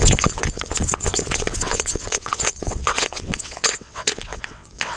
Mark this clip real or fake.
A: fake